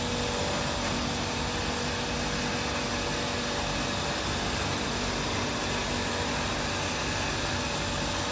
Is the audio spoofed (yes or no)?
no